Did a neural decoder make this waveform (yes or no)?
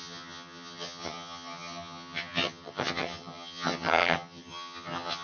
yes